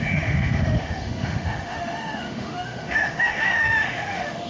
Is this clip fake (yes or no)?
yes